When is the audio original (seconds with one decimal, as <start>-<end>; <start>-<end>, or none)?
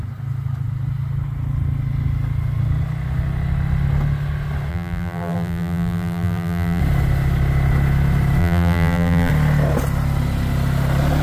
0.0-4.7; 6.8-8.4; 9.3-11.2